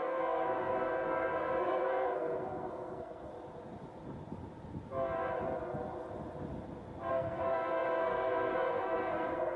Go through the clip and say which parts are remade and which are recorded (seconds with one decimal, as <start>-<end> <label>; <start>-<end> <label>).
0.0-3.3 remade; 3.3-7.1 recorded; 7.1-9.6 remade